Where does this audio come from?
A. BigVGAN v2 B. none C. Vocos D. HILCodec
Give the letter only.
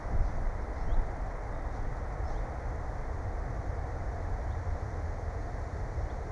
B